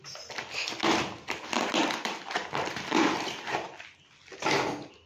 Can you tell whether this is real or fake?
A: real